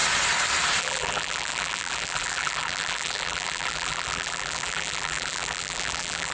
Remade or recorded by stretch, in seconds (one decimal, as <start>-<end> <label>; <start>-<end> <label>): 0.0-0.8 recorded; 0.8-6.3 remade